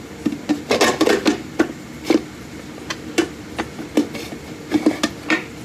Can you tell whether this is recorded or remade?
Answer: recorded